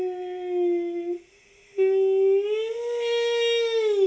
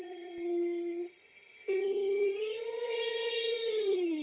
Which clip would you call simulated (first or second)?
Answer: second